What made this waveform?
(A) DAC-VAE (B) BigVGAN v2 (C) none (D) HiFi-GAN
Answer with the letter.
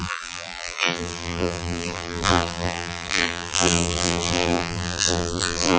B